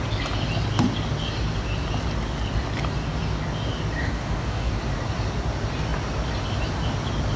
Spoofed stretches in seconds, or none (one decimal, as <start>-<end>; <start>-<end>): 4.0-4.7